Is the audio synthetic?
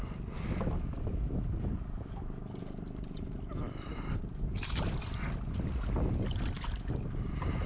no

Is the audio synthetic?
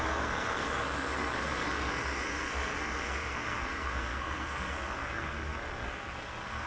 yes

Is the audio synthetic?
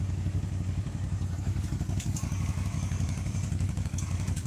yes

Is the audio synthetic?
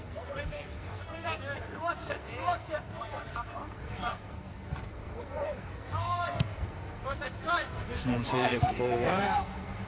yes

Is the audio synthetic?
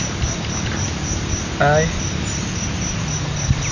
no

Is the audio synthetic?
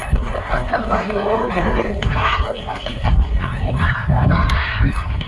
yes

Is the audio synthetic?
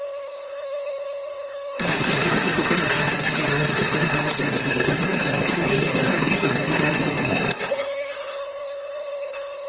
yes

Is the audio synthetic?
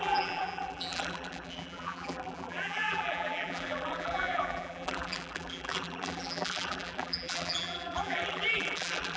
yes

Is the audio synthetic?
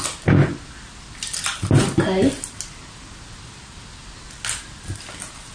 no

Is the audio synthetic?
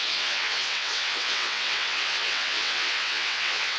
yes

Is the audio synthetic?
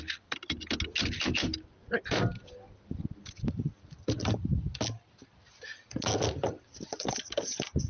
no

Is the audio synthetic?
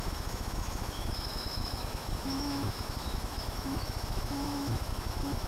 yes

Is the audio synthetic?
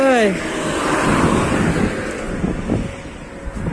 no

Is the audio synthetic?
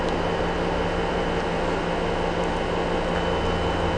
no